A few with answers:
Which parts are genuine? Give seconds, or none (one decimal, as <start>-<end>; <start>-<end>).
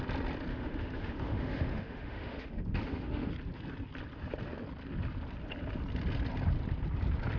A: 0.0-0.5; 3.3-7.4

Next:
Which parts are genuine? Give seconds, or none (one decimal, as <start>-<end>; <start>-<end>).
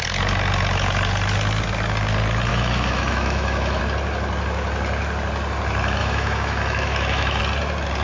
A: 0.0-2.5; 3.8-6.0; 7.4-8.0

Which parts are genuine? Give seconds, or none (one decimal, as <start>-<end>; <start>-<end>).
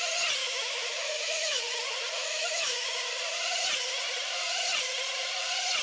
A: 0.0-0.4; 1.6-2.2; 2.9-5.8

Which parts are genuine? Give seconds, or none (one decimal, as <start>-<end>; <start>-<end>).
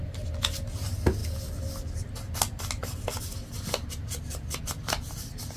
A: 0.0-5.6